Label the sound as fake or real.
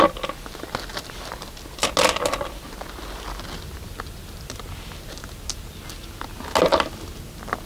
real